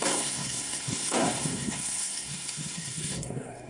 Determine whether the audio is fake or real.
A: fake